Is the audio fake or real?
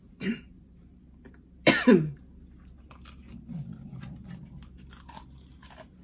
real